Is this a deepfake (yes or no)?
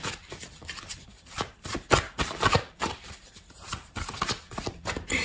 yes